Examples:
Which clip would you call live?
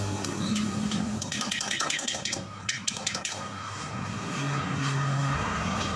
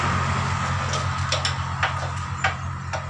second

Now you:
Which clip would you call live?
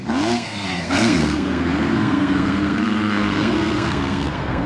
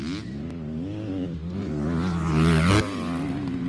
second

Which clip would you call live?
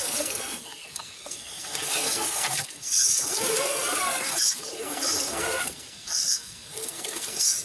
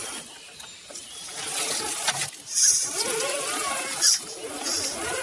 second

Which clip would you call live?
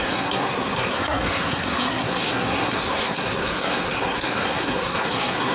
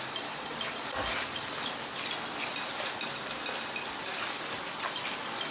second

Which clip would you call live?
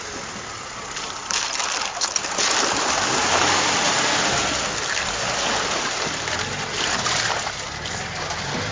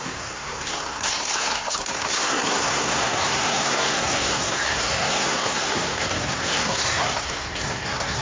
first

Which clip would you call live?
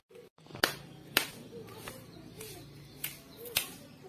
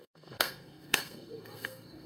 first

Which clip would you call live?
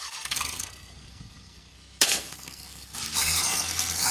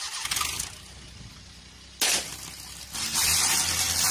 second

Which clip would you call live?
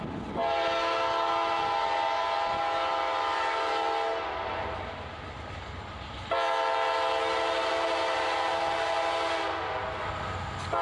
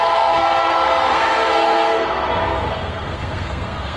first